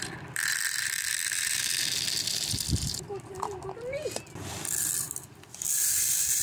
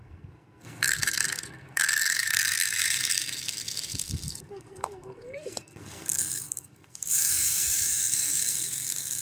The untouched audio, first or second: first